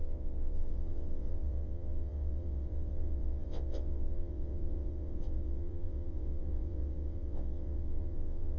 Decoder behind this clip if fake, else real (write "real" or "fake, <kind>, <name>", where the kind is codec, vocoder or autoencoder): fake, vocoder, WaveNeXt